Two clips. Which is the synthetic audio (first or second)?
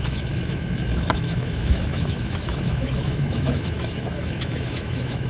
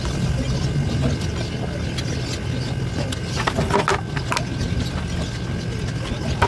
first